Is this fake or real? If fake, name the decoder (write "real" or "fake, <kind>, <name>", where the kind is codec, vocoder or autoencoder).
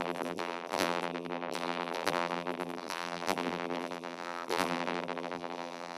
fake, vocoder, BigVGAN v2